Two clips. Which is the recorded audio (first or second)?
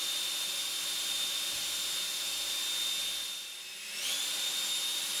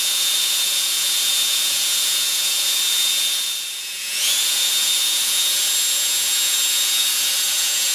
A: first